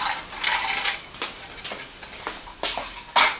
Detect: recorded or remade recorded